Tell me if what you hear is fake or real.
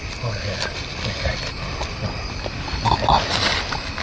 real